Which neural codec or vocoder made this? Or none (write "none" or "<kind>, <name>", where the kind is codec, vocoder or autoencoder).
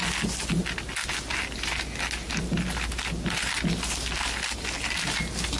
none